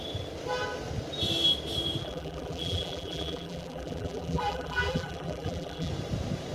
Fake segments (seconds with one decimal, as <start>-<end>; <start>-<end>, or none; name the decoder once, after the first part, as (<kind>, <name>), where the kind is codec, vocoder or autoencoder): 2.0-5.9 (vocoder, BigVGAN v2)